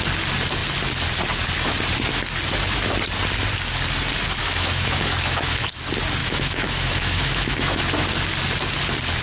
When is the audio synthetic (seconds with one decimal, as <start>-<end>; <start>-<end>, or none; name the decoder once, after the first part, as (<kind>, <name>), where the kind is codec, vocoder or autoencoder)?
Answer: 4.4-5.7 (autoencoder, DAC-VAE); 6.2-7.8